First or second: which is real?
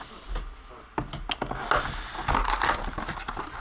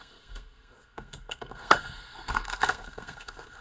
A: first